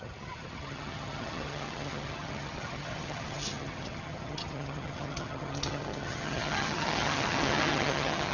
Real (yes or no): no